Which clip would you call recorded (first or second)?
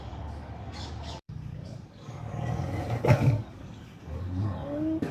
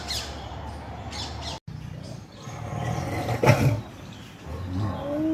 second